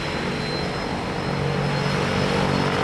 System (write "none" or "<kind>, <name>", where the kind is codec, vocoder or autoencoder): none